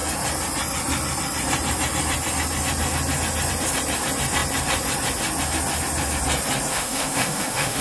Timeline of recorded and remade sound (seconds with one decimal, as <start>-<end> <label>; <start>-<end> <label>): 0.0-6.7 recorded; 6.7-7.8 remade